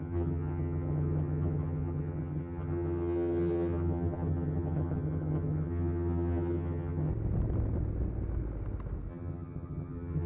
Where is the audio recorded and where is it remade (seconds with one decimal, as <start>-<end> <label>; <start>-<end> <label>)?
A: 0.0-7.1 remade; 7.1-9.1 recorded; 9.1-10.3 remade